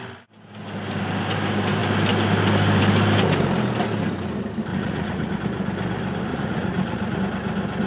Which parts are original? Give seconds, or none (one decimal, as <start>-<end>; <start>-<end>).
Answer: 0.0-4.7; 5.3-6.3; 7.2-7.9